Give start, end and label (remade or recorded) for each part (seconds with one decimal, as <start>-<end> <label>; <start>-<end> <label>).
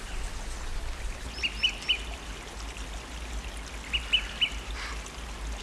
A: 0.0-5.6 recorded